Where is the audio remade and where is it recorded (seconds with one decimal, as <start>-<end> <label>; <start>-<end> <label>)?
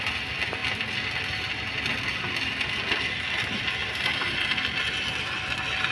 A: 0.0-5.9 recorded